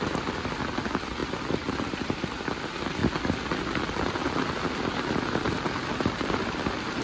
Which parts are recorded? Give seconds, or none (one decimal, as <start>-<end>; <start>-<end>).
0.0-3.0